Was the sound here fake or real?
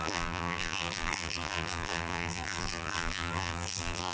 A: fake